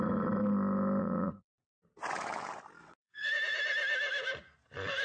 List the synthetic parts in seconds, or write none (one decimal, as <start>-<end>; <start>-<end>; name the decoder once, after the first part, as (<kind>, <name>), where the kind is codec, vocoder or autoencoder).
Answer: 1.0-1.8 (vocoder, WaveNeXt); 2.8-3.3